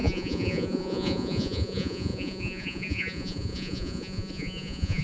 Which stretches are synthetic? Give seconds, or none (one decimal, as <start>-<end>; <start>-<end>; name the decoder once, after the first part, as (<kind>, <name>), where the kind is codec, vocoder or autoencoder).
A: 0.0-5.0 (vocoder, Vocos)